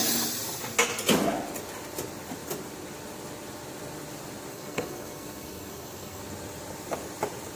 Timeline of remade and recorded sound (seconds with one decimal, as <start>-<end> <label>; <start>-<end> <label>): 0.0-4.5 recorded; 4.5-6.2 remade; 6.2-7.6 recorded